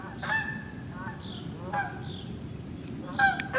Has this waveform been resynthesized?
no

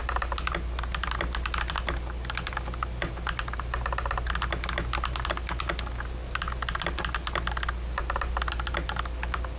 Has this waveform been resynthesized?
no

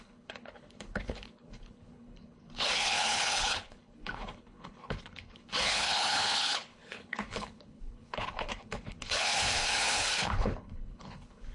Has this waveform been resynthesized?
yes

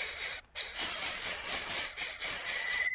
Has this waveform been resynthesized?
yes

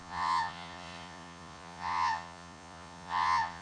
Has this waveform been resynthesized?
yes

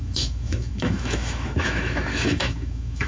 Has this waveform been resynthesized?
yes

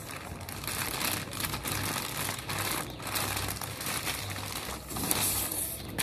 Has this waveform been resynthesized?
no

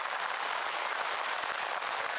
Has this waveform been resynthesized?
no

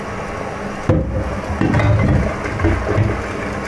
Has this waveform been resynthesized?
no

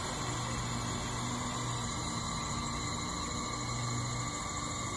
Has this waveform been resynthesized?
no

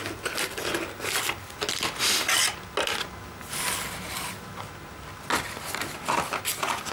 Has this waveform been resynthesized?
no